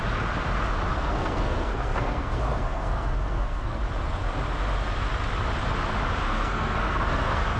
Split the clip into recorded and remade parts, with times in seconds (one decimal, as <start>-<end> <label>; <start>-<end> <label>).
0.0-0.9 recorded; 0.9-3.8 remade; 3.8-6.2 recorded; 6.2-7.6 remade